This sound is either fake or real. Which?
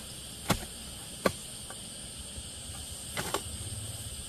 real